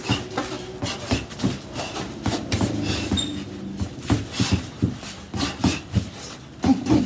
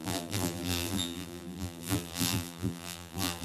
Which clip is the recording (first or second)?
first